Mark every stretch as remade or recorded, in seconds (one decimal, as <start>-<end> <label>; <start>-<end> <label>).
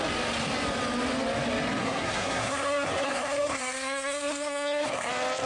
0.0-1.8 recorded; 1.8-5.1 remade; 5.1-5.5 recorded